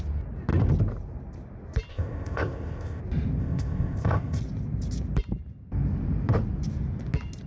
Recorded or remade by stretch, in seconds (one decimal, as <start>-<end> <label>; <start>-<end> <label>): 0.0-1.9 recorded; 1.9-3.0 remade; 3.0-3.4 recorded; 3.4-4.4 remade; 4.4-7.5 recorded